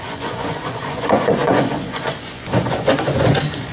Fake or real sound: fake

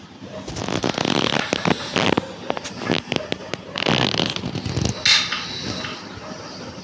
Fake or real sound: real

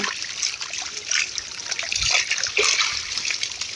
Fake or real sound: real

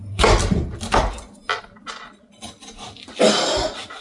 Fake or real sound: real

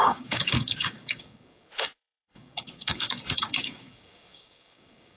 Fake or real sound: fake